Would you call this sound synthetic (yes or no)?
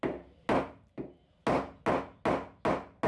no